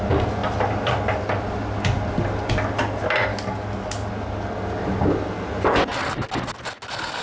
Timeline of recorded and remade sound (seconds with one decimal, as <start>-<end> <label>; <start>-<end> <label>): 0.0-3.3 recorded; 3.3-4.1 remade; 4.1-7.2 recorded